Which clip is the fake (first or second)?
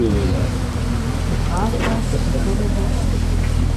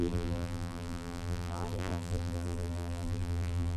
second